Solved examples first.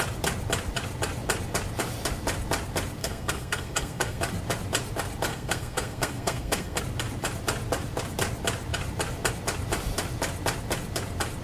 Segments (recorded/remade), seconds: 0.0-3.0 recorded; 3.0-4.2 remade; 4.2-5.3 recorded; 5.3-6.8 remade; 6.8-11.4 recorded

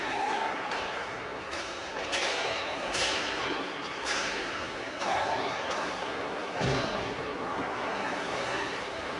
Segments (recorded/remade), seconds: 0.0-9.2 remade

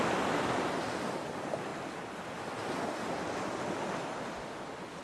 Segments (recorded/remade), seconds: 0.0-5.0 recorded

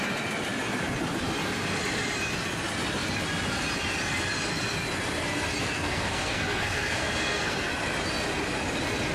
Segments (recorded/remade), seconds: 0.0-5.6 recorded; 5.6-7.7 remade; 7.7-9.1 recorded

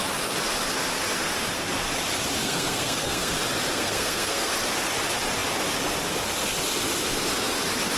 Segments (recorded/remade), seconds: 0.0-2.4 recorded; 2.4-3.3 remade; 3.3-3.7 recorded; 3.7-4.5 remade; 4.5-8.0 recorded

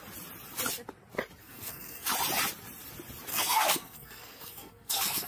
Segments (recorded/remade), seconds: 0.0-1.4 recorded; 1.4-2.1 remade; 2.1-3.3 recorded; 3.3-5.3 remade

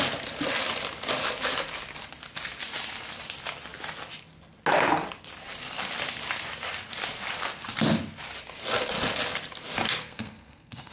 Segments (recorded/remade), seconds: 0.0-10.0 recorded; 10.0-10.9 remade

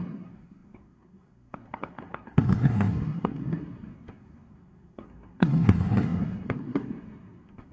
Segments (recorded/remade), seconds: 0.0-7.7 remade